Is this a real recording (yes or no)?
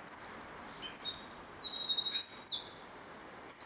yes